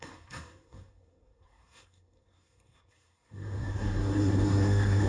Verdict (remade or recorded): remade